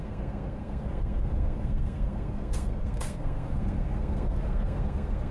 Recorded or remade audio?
remade